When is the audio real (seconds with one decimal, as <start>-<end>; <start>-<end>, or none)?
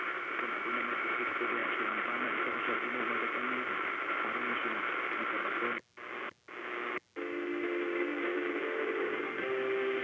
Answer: 0.0-1.6; 3.9-8.1; 9.3-10.0